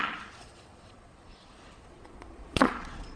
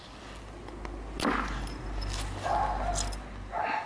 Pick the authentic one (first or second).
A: second